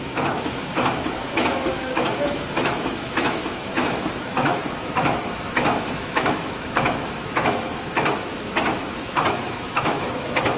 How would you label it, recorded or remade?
remade